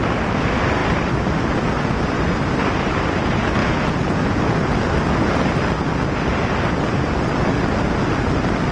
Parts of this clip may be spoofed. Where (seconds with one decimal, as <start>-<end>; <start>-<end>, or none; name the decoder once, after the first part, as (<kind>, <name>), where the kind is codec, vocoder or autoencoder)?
3.6-4.7 (vocoder, Vocos)